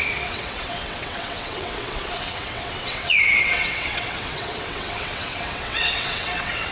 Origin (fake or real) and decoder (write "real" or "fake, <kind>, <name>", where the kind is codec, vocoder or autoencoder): fake, vocoder, WaveNeXt